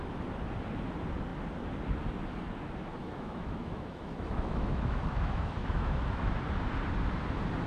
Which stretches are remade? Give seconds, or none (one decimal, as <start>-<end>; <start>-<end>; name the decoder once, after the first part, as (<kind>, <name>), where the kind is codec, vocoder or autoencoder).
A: 3.0-6.3 (autoencoder, DAC-VAE)

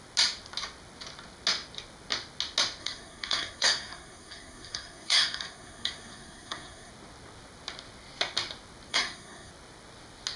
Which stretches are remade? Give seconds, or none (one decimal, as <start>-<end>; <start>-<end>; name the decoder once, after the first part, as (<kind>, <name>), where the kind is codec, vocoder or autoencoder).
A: 2.8-6.9 (codec, SNAC); 8.9-9.5

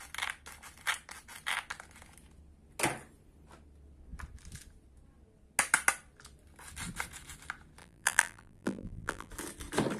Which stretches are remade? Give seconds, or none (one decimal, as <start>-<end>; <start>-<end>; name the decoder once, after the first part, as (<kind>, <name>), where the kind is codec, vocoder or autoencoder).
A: 7.8-9.3 (vocoder, BigVGAN v2)

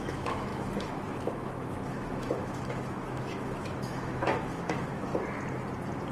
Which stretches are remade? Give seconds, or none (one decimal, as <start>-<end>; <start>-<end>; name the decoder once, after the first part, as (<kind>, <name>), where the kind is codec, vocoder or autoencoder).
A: 0.0-5.1 (autoencoder, DAC-VAE)

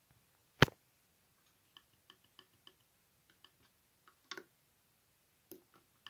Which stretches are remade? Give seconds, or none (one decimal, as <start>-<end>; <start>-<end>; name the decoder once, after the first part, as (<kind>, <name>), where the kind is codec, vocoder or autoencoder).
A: none

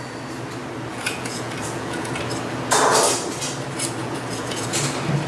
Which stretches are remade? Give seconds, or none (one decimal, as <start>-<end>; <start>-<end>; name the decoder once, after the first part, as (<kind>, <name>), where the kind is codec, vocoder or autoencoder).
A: 0.9-2.1 (vocoder, Vocos); 4.0-4.8

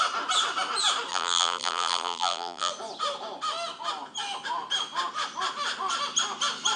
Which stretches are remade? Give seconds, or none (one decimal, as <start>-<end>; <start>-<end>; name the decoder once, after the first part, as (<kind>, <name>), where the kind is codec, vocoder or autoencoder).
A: 1.1-2.7 (vocoder, BigVGAN v2)